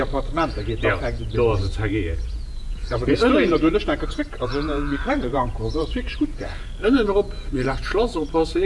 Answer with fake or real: fake